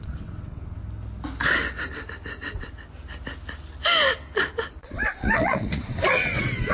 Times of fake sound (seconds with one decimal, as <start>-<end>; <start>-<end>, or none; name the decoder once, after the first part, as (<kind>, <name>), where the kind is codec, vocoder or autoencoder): 0.0-0.8 (vocoder, WaveNeXt); 4.8-6.7